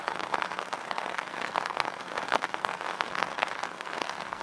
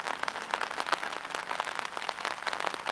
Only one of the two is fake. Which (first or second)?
first